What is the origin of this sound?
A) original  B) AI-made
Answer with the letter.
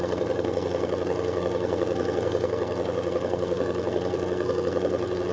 B